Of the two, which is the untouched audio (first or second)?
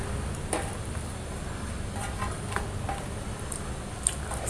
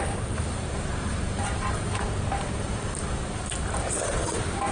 first